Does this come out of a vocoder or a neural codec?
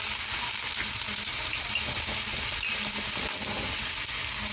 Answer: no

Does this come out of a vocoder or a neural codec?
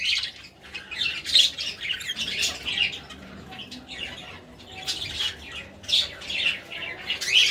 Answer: no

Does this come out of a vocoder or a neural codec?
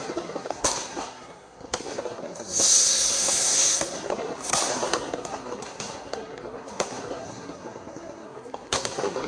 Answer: yes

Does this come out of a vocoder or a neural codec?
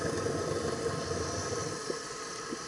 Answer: no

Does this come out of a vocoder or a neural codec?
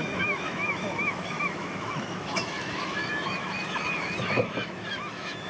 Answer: yes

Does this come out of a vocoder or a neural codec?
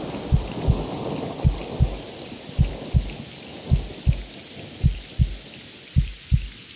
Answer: no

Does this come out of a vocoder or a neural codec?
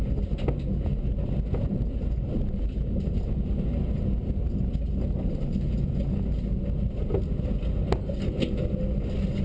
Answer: no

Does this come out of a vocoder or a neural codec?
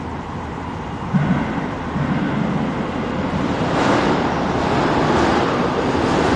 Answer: no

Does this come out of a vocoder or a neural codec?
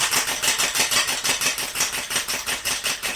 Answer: yes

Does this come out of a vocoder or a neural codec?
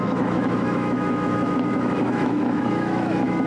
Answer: yes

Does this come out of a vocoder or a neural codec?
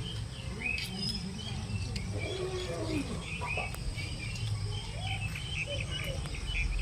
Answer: no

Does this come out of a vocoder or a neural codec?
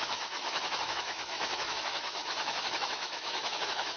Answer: yes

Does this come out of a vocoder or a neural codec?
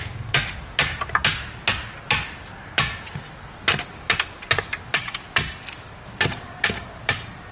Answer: no